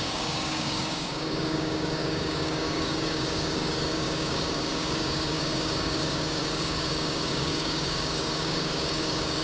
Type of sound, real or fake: fake